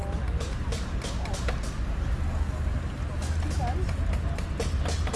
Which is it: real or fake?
real